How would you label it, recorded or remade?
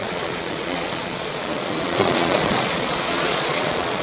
remade